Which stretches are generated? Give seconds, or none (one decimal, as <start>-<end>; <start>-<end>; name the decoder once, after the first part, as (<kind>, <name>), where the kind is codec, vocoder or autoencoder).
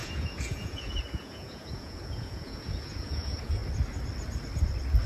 0.0-3.6 (vocoder, Vocos)